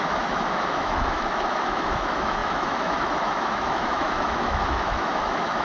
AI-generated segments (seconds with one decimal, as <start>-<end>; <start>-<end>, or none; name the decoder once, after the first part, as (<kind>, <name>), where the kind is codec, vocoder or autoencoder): 0.0-5.6 (autoencoder, DAC-VAE)